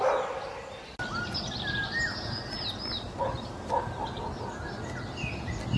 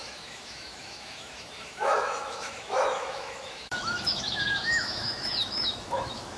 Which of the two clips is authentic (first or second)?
first